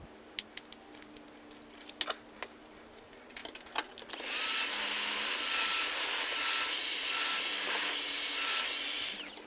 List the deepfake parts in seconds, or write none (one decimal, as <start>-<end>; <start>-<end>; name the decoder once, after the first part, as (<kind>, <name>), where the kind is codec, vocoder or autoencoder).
none